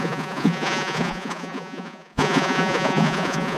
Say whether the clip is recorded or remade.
remade